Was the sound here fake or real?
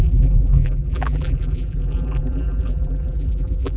fake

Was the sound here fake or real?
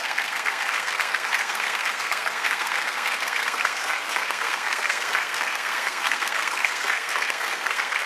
fake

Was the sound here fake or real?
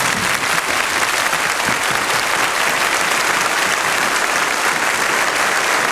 real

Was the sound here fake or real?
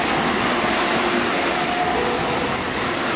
real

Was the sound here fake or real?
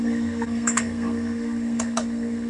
fake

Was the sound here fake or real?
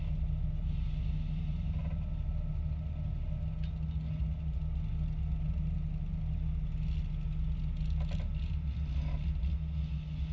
real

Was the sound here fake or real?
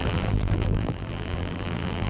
fake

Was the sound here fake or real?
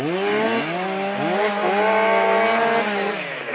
real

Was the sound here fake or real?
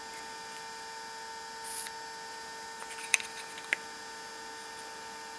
real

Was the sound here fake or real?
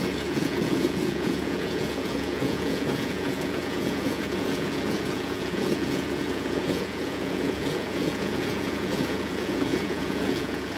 fake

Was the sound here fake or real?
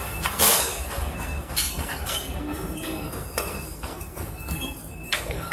fake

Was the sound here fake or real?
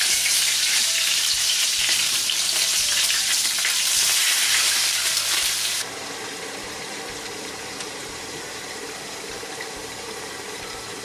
fake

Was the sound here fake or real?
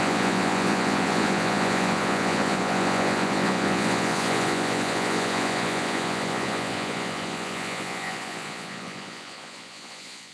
fake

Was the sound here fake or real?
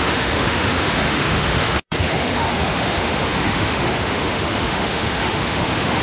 fake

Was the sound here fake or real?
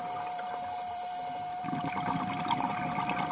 fake